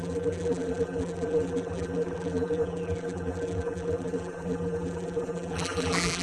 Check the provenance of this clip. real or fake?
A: fake